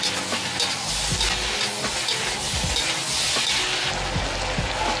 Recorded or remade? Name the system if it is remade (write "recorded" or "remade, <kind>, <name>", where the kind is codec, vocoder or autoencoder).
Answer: recorded